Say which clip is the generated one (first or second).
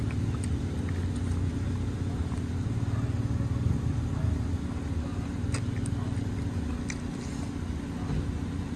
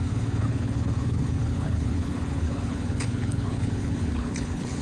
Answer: second